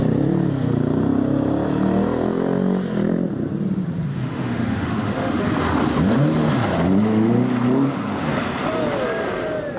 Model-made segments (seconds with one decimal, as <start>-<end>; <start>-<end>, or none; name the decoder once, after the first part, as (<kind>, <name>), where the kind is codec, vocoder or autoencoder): 4.1-5.4 (autoencoder, DAC-VAE)